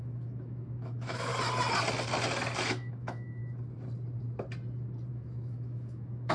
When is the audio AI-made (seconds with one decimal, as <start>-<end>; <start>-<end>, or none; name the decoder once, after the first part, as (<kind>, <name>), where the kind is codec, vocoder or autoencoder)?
0.0-1.3 (autoencoder, DAC-VAE); 2.7-3.4; 5.1-6.3